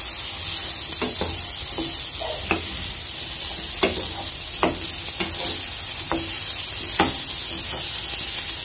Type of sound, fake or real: real